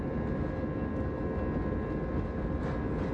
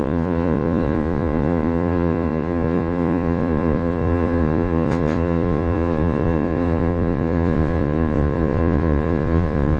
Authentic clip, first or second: first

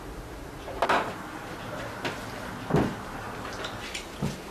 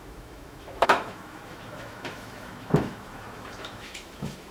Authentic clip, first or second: first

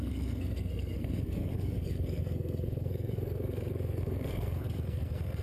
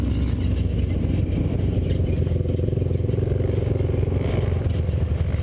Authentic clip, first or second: second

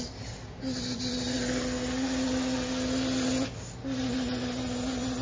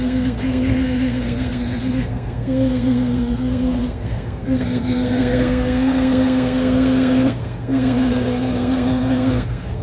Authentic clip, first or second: first